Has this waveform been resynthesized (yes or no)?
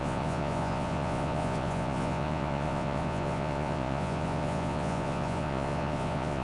yes